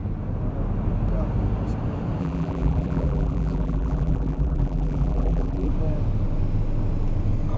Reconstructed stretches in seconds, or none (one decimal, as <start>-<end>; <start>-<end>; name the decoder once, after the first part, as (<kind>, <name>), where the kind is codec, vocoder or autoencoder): 2.2-5.7 (vocoder, BigVGAN v2)